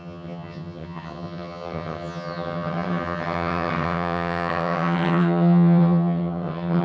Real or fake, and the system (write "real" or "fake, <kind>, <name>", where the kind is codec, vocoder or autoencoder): fake, vocoder, HiFi-GAN